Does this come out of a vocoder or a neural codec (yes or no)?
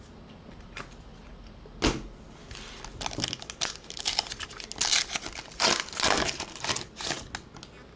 no